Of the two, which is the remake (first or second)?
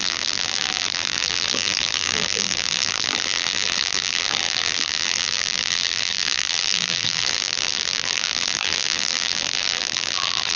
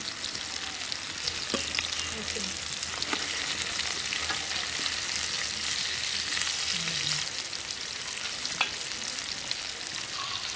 first